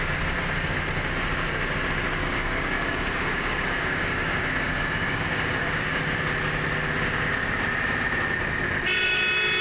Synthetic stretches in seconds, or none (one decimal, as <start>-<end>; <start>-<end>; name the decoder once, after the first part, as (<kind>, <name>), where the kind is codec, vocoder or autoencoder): 2.2-6.0 (codec, DAC)